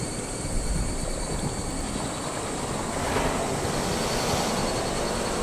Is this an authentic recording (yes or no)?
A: yes